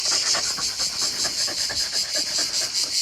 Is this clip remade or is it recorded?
recorded